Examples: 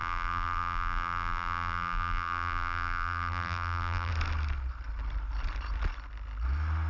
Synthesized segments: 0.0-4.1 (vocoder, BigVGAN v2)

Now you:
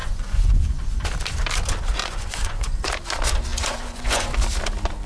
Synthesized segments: 0.0-1.0 (vocoder, Vocos); 2.0-2.9; 3.5-4.3